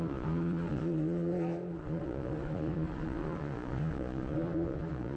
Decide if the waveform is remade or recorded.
remade